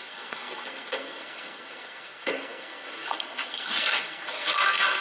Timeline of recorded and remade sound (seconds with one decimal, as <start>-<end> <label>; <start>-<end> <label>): 0.0-5.0 remade